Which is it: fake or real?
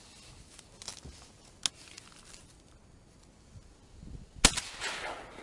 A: real